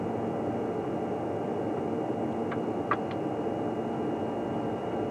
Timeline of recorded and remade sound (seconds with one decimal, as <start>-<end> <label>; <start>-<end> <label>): 0.0-5.1 recorded